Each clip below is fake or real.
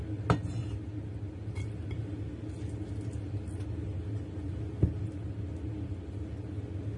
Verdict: real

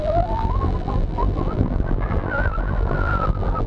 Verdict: fake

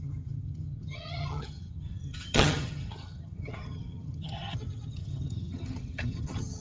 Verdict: fake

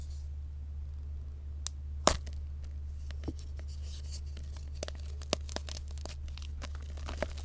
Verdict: real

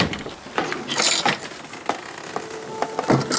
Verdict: real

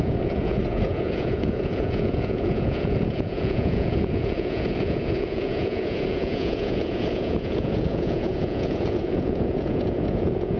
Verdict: fake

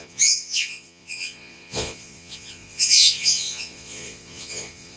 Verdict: fake